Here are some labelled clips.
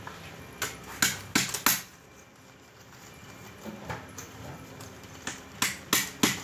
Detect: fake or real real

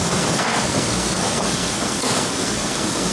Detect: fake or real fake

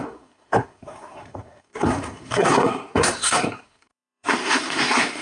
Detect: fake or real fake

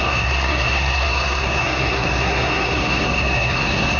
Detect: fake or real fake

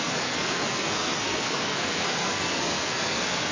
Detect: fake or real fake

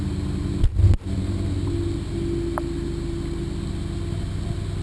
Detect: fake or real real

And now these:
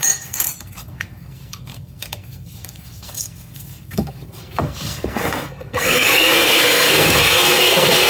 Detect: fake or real fake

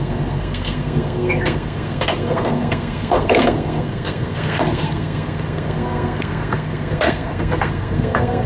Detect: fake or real fake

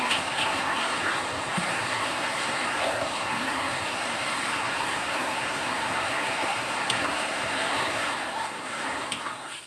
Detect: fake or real fake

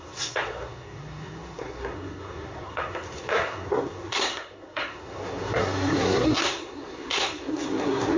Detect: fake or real fake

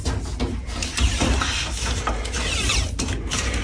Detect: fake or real real